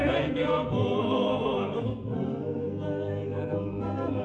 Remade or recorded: remade